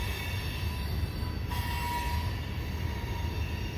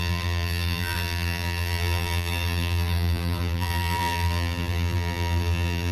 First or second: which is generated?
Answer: second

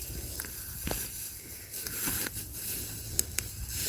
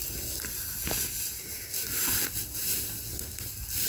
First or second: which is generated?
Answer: first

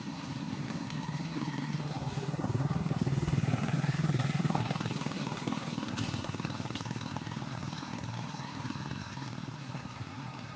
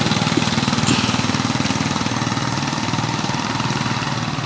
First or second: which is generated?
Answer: first